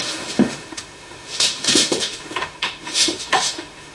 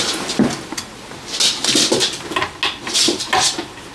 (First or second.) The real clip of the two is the second